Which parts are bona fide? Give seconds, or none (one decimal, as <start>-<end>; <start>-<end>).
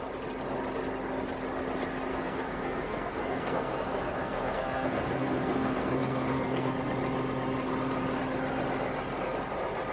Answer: 0.0-2.1; 6.7-9.9